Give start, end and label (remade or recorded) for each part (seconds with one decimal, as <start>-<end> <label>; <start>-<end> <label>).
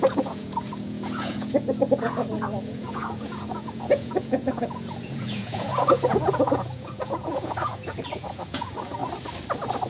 0.0-9.0 remade; 9.0-9.9 recorded